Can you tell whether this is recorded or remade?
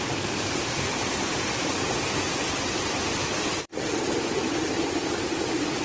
remade